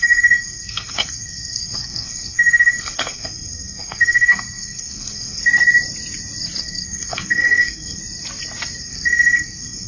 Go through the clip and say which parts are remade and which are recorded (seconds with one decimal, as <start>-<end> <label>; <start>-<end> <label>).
0.0-5.4 remade; 5.4-6.6 recorded; 6.6-8.0 remade; 8.0-8.8 recorded; 8.8-9.9 remade

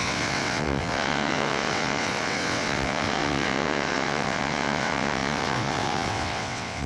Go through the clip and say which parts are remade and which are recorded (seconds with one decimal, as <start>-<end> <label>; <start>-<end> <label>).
0.0-6.9 remade

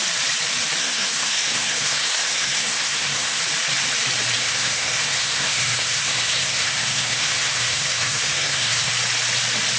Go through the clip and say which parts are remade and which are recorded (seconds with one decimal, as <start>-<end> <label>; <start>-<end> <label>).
0.0-0.8 recorded; 0.8-3.4 remade; 3.4-4.4 recorded; 4.4-8.9 remade; 8.9-9.8 recorded

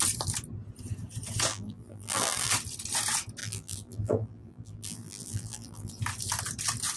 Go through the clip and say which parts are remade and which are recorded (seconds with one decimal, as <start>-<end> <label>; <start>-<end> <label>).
0.0-1.5 recorded; 1.5-2.5 remade; 2.5-3.4 recorded; 3.4-6.0 remade; 6.0-7.0 recorded

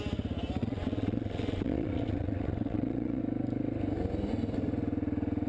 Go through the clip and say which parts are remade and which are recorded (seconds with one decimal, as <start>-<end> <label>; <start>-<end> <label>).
0.0-0.6 recorded; 0.6-3.2 remade; 3.2-5.5 recorded

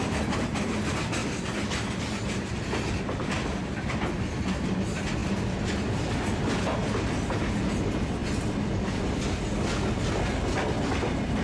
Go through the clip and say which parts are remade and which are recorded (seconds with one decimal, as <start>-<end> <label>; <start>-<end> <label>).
0.0-11.4 recorded

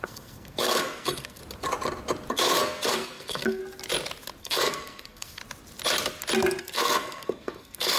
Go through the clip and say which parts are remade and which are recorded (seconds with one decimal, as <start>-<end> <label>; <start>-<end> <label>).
0.0-1.4 remade; 1.4-2.3 recorded; 2.3-3.6 remade; 3.6-4.4 recorded; 4.4-5.4 remade; 5.4-6.6 recorded; 6.6-8.0 remade

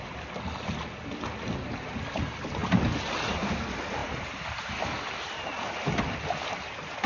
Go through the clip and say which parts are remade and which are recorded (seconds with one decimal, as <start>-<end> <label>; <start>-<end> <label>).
0.0-4.0 recorded; 4.0-6.0 remade; 6.0-7.1 recorded